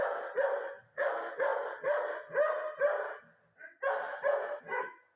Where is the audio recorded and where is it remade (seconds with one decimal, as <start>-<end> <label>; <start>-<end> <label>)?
0.0-5.2 recorded